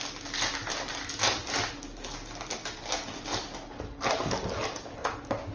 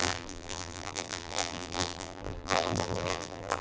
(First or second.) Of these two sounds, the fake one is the second